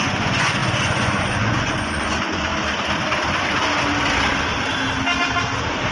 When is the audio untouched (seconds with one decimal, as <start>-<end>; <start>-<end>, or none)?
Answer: 2.5-5.9